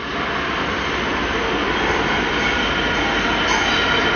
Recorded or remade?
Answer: recorded